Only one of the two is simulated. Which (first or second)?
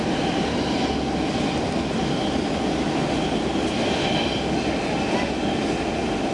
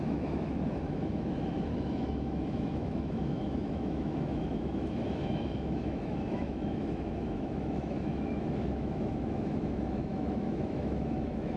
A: second